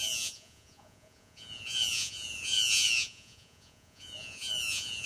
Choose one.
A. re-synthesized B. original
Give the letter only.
A